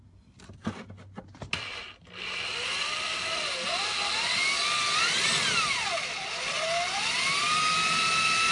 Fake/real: real